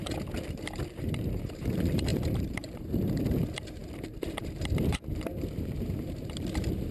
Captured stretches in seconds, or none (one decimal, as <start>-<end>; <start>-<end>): none